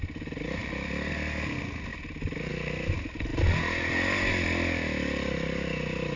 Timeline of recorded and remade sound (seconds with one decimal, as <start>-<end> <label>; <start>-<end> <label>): 0.0-0.6 recorded; 0.6-1.1 remade; 1.1-1.9 recorded; 1.9-2.5 remade; 2.5-6.2 recorded